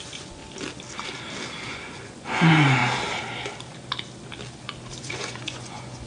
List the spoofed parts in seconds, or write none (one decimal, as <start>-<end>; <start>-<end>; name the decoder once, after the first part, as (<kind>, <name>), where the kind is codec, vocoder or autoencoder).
0.0-0.4 (vocoder, Vocos); 1.7-2.8; 5.0-6.1